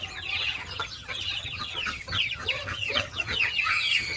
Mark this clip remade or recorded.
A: remade